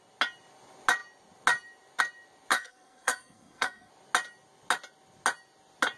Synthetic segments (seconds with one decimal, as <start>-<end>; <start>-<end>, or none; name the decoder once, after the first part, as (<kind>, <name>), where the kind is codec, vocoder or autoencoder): 2.5-3.9 (codec, SNAC)

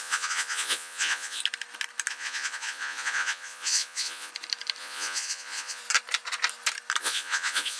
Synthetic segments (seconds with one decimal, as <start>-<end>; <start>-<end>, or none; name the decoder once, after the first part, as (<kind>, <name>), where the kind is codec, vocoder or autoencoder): 0.0-1.4 (vocoder, Vocos); 2.1-4.3; 4.8-5.8; 7.0-7.8

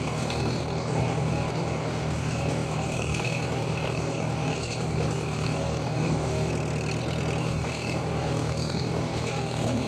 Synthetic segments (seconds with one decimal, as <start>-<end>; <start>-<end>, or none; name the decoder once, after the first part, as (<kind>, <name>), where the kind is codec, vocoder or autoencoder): 0.0-6.5 (codec, DAC); 7.4-9.9

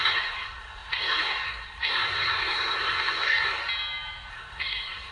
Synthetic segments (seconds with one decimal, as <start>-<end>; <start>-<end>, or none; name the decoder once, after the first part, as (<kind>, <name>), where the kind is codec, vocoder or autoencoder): 0.0-3.6 (codec, SNAC); 4.3-5.1

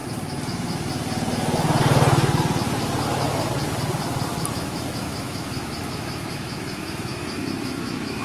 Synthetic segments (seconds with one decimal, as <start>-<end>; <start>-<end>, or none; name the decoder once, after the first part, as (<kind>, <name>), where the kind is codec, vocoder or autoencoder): 4.5-8.2 (autoencoder, DAC-VAE)

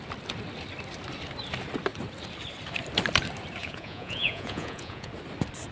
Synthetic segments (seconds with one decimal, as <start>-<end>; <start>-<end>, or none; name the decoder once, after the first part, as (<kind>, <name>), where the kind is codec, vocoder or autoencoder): 3.6-5.1 (vocoder, Vocos)

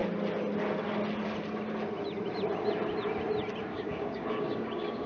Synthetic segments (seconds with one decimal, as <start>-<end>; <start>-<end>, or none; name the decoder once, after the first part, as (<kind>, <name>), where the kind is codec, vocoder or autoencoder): 3.7-5.1 (codec, DAC)